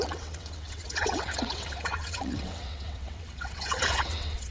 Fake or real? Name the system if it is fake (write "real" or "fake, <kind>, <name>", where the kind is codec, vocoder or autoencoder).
fake, vocoder, WaveNeXt